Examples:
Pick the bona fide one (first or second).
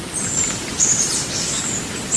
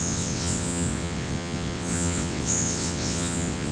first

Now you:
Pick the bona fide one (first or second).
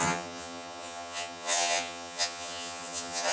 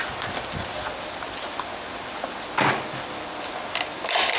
second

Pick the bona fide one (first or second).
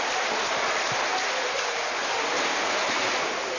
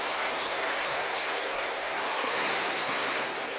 first